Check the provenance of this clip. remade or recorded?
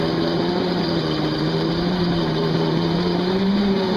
remade